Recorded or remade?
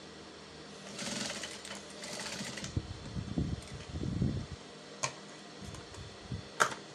recorded